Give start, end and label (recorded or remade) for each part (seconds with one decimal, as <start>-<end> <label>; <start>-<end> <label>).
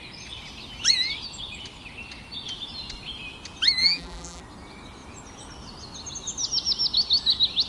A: 0.0-3.8 recorded; 3.8-4.4 remade; 4.4-7.7 recorded